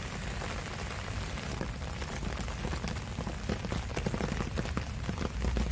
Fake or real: real